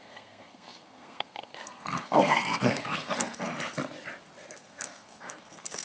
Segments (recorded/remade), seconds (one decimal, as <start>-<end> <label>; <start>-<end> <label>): 0.0-3.5 remade; 3.5-4.5 recorded; 4.5-5.8 remade